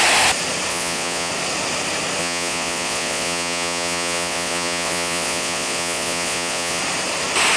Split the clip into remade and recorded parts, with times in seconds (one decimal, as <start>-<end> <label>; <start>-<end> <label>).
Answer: 0.0-0.7 recorded; 0.7-1.3 remade; 1.3-2.2 recorded; 2.2-6.8 remade; 6.8-7.6 recorded